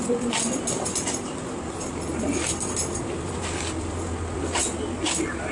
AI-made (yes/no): yes